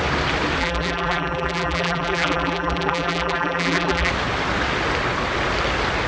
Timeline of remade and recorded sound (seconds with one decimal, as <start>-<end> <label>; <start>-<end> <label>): 0.0-0.6 recorded; 0.6-4.1 remade; 4.1-6.1 recorded